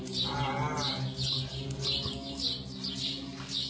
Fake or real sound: real